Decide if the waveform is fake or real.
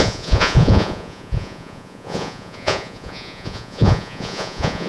fake